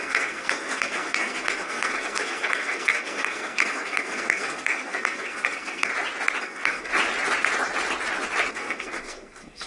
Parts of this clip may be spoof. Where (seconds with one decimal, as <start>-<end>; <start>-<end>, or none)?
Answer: 0.0-5.9; 6.4-6.9; 8.5-9.7